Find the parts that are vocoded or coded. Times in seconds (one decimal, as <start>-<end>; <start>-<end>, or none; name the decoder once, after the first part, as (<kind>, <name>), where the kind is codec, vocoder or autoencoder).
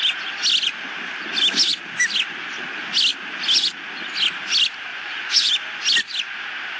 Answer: 4.9-5.5 (vocoder, Vocos)